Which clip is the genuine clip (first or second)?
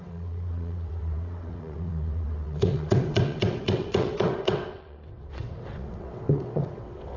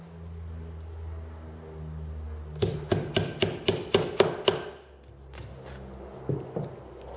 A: second